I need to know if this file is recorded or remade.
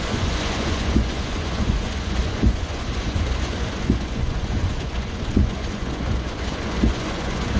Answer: remade